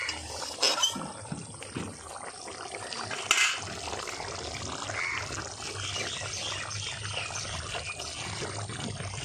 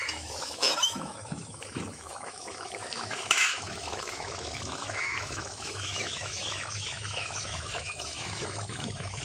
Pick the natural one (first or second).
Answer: first